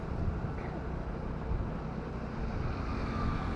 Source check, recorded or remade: recorded